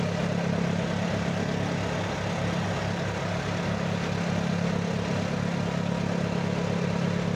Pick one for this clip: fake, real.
real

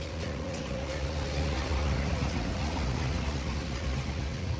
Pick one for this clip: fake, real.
fake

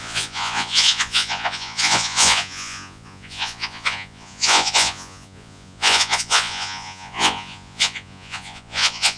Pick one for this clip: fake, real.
fake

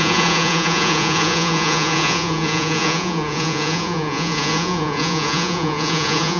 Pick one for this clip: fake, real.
fake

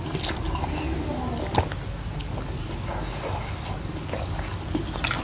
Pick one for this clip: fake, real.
real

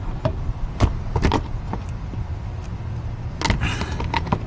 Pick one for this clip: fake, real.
real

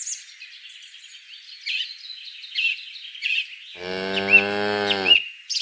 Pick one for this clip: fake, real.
real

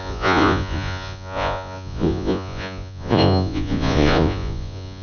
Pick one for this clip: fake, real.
fake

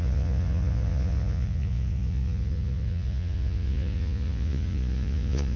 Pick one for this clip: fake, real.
fake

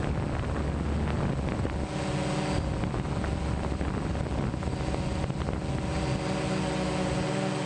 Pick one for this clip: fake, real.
real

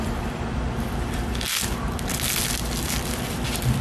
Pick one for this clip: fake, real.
real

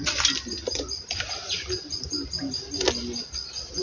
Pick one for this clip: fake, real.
real